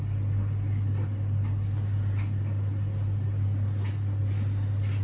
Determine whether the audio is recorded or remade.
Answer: recorded